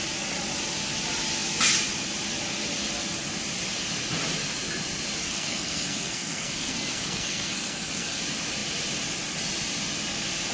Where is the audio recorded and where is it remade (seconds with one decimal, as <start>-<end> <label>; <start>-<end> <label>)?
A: 0.0-5.2 recorded; 5.2-8.2 remade; 8.2-10.5 recorded